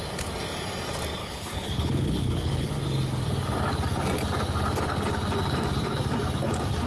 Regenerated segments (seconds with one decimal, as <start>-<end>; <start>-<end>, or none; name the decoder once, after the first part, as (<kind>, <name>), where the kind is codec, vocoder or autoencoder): 1.2-2.7 (codec, HILCodec)